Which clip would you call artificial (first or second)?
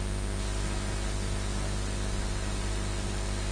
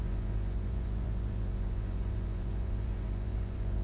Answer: second